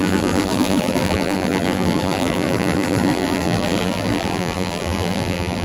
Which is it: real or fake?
fake